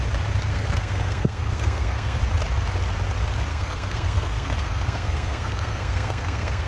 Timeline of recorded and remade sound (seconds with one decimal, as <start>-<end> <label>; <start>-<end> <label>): 0.0-0.5 recorded; 0.5-2.2 remade; 2.2-3.5 recorded; 3.5-6.7 remade